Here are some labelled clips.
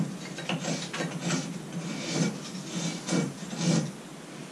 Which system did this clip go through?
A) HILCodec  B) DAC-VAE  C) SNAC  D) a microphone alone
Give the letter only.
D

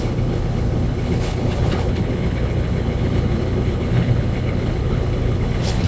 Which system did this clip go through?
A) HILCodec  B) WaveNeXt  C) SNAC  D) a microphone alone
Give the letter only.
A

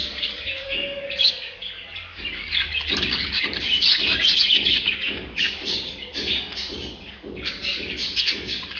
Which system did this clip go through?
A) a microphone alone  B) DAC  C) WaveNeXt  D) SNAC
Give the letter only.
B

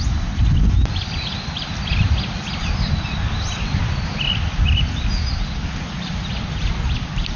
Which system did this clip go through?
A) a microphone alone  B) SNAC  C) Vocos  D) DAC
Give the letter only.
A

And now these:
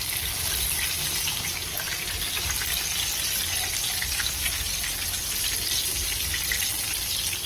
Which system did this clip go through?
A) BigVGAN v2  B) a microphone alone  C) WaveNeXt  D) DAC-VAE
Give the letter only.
B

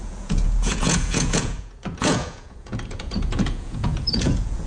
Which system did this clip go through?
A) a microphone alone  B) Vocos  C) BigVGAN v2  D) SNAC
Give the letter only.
B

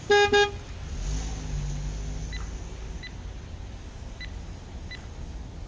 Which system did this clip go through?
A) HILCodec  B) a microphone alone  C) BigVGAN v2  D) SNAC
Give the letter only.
B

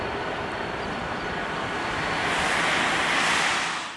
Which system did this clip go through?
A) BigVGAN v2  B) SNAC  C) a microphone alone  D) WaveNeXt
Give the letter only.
C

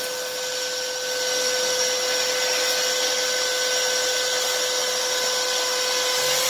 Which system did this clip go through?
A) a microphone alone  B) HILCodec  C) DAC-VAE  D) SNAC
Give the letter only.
A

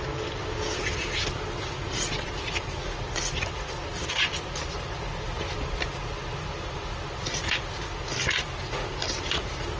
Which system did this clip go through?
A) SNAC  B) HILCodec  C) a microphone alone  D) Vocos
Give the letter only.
C